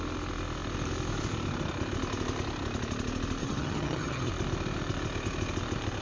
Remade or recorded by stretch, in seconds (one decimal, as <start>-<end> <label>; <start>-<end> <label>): 0.0-3.4 recorded; 3.4-4.3 remade; 4.3-6.0 recorded